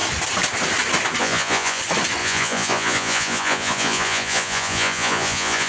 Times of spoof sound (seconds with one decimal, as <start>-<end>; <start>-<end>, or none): 1.2-1.8; 2.2-5.7